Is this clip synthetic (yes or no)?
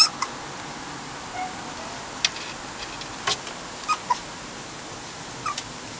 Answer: no